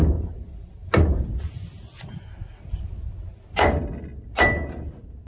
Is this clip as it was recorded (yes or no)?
yes